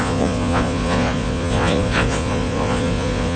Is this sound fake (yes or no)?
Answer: yes